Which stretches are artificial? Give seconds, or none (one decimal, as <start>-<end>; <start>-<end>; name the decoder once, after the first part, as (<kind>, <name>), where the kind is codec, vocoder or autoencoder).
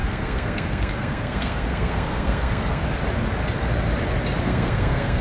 0.0-2.8 (codec, SNAC); 4.4-5.2